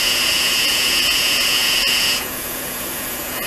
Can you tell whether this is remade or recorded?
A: remade